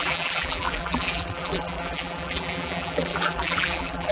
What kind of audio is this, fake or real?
fake